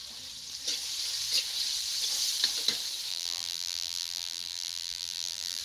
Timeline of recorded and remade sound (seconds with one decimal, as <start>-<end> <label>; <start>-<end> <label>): 0.0-3.1 recorded; 3.1-5.6 remade